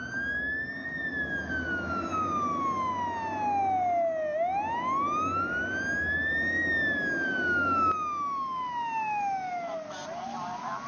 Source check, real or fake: real